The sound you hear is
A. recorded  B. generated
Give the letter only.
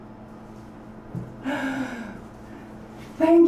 A